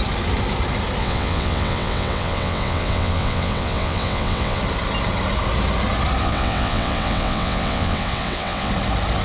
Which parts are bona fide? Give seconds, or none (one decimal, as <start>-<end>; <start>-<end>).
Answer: 0.0-1.0; 4.6-6.2; 8.7-9.2